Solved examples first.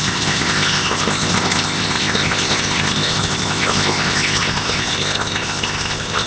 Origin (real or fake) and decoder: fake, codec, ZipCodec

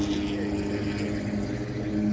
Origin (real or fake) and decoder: real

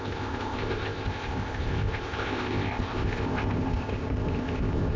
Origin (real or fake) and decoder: fake, codec, ZipCodec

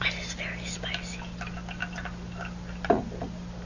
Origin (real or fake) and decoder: real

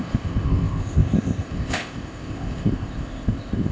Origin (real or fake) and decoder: fake, codec, ZipCodec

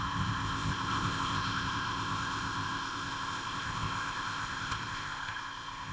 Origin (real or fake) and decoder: fake, codec, ZipCodec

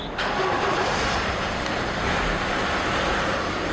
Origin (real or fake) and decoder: real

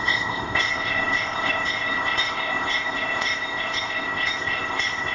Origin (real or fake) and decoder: fake, codec, ZipCodec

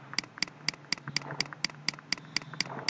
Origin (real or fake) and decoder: real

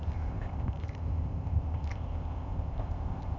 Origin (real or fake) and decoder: fake, codec, ZipCodec